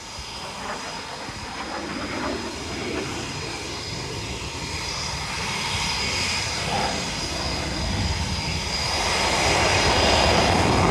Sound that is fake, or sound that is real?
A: real